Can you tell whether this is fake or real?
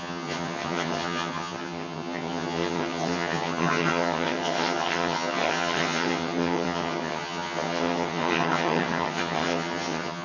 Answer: fake